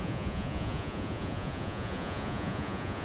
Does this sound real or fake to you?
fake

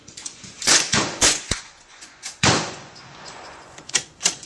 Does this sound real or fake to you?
fake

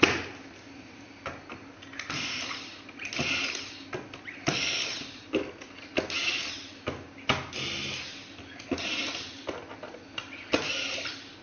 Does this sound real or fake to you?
real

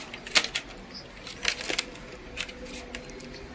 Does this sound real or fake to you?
real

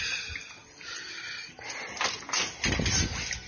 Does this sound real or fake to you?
real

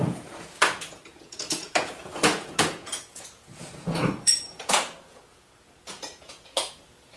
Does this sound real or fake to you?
fake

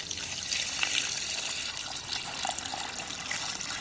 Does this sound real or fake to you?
real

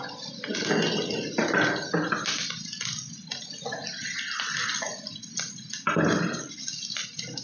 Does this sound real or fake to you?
real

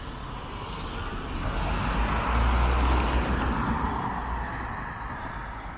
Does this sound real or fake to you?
real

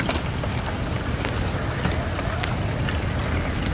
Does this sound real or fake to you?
real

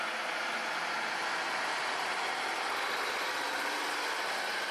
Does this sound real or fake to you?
real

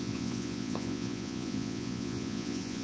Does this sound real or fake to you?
fake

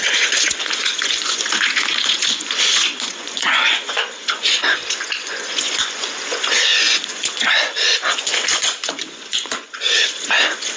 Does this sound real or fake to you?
fake